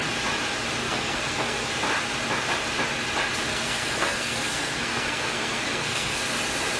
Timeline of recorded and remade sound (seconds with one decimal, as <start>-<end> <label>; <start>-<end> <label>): 0.0-0.8 recorded; 0.8-1.7 remade; 1.7-3.5 recorded; 3.5-6.2 remade; 6.2-6.8 recorded